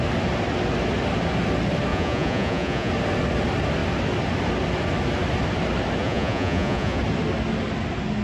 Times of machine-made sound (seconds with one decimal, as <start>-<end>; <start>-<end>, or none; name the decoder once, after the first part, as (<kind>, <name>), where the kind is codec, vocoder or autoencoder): 1.9-2.9 (vocoder, Vocos); 6.0-7.0